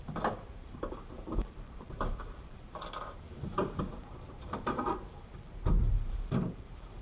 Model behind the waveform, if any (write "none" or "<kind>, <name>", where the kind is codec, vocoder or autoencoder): vocoder, BigVGAN v2